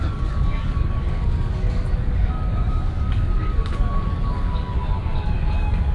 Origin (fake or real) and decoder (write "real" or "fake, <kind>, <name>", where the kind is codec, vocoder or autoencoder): fake, codec, DAC